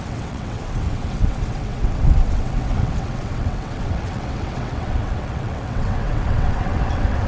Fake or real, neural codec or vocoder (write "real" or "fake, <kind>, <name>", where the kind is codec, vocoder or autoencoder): fake, vocoder, WaveNeXt